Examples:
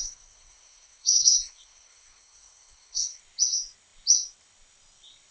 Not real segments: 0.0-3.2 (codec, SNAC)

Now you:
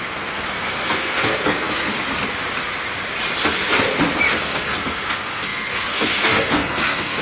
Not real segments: 0.0-1.9 (codec, SNAC); 4.3-7.2

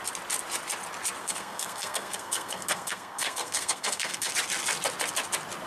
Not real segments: 1.2-4.3 (codec, SNAC)

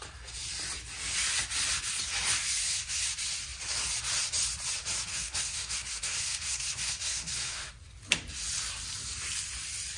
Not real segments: 2.6-3.1 (codec, SNAC); 5.1-7.7